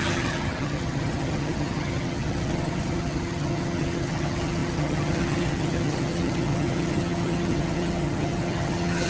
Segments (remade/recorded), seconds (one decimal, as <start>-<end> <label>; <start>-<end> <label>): 0.0-9.1 remade